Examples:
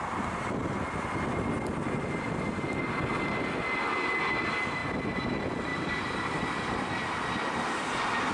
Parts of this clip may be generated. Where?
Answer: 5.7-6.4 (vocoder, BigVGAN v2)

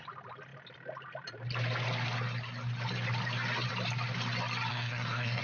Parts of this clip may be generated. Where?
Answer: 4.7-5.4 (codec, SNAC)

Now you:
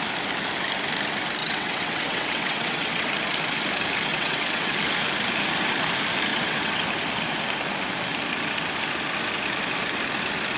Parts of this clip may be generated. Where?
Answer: 1.4-3.1 (vocoder, WaveNeXt); 4.1-4.7; 6.3-6.8

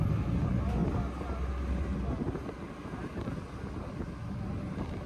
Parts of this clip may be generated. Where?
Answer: none

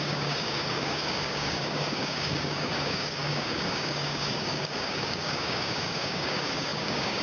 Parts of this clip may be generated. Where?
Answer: 0.0-7.2 (codec, DAC)

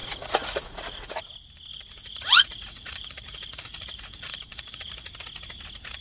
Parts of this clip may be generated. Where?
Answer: 0.0-1.2 (vocoder, Vocos); 1.7-5.1

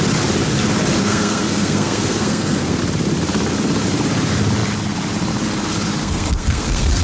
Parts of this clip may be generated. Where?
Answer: 1.0-2.8 (codec, SNAC); 6.0-7.0

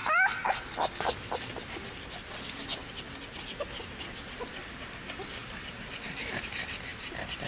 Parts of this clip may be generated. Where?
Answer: 4.5-7.5 (vocoder, BigVGAN v2)